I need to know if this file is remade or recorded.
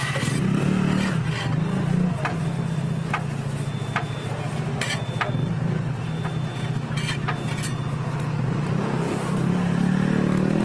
recorded